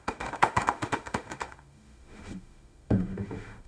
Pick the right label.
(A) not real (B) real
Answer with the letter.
A